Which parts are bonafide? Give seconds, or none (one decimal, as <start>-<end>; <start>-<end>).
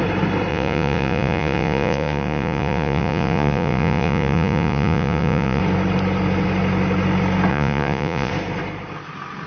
0.0-0.5; 5.6-7.5; 8.3-9.5